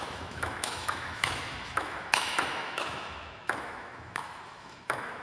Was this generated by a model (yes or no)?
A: yes